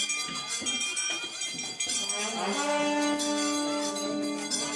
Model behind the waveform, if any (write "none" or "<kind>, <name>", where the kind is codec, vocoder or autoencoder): none